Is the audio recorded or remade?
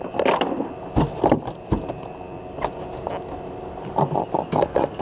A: recorded